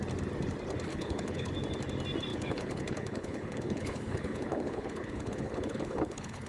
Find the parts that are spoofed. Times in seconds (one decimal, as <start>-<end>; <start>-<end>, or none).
0.9-1.5; 2.3-6.5